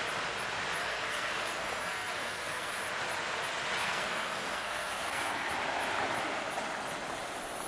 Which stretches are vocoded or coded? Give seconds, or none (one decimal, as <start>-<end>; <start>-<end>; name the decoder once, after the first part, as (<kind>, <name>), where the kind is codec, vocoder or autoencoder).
0.8-2.7 (codec, SNAC); 3.8-5.5

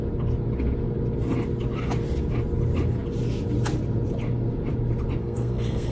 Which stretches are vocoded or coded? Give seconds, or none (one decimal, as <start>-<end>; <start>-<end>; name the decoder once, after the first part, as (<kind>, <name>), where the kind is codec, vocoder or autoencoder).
5.2-5.9 (codec, SNAC)

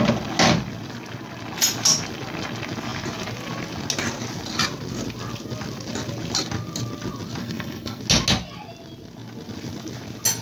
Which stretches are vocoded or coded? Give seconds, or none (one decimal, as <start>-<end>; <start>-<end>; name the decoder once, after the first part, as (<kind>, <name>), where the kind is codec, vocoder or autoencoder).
7.4-8.0 (codec, SNAC)